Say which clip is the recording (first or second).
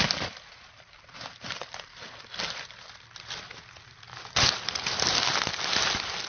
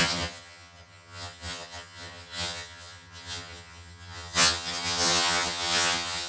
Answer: first